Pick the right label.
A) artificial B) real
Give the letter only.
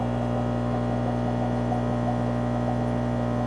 B